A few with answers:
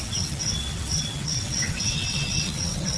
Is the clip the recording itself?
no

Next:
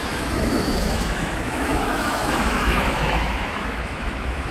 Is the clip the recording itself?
no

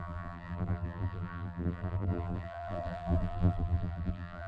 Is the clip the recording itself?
no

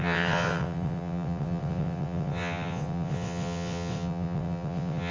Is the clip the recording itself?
no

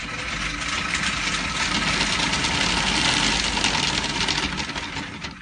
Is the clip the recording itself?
yes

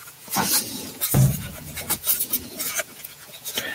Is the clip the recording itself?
no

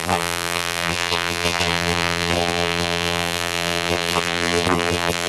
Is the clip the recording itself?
no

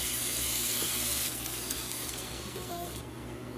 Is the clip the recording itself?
no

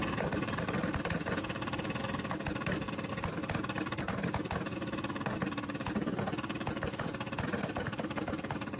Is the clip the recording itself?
yes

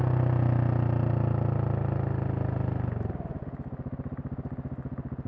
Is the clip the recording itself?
yes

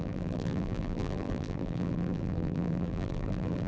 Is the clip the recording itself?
no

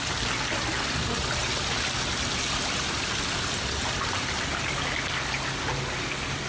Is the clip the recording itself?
yes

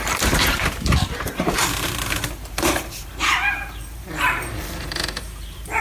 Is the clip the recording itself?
no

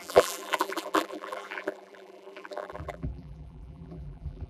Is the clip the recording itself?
no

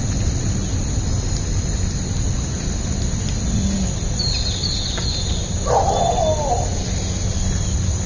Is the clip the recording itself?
yes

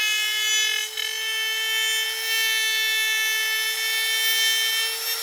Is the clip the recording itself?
yes